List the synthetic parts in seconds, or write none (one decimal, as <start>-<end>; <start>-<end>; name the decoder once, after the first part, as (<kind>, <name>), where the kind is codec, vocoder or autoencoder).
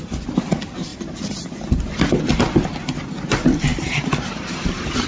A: 0.9-1.5 (vocoder, BigVGAN v2)